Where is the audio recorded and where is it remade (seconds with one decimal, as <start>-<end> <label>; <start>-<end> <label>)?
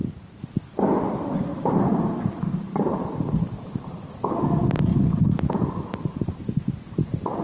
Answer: 0.0-1.5 recorded; 1.5-4.1 remade; 4.1-4.9 recorded; 4.9-6.4 remade; 6.4-7.4 recorded